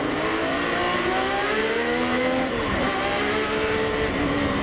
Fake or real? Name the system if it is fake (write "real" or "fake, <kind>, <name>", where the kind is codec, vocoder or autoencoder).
fake, vocoder, BigVGAN v2